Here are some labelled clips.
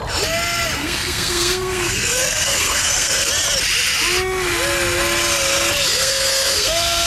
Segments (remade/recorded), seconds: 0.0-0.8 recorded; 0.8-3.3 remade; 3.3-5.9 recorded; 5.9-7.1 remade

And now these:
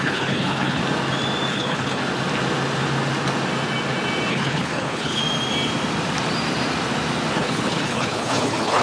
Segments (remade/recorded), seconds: 0.0-0.8 remade; 0.8-1.5 recorded; 1.5-2.0 remade; 2.0-4.3 recorded; 4.3-5.2 remade; 5.2-7.3 recorded; 7.3-8.8 remade

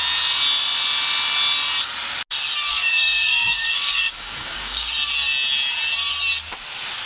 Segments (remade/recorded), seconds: 0.0-2.7 recorded; 2.7-4.9 remade; 4.9-7.1 recorded

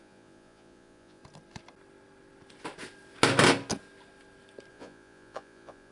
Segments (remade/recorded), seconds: 0.0-1.2 remade; 1.2-4.7 recorded; 4.7-5.9 remade

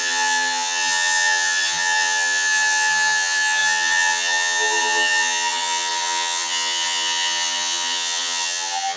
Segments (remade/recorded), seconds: 0.0-9.0 remade

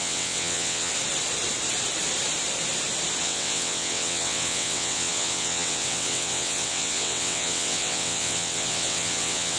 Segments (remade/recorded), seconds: 0.0-0.9 remade; 0.9-3.2 recorded; 3.2-9.6 remade